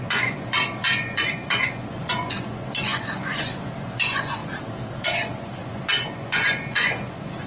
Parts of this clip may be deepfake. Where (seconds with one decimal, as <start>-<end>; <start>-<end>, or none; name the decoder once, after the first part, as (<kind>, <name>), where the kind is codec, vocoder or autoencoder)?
0.0-4.4 (vocoder, Vocos); 5.0-7.5